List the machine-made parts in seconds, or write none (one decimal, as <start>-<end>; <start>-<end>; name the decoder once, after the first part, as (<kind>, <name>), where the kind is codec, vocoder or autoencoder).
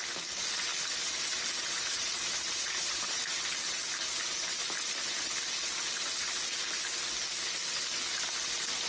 0.7-3.4 (vocoder, BigVGAN v2)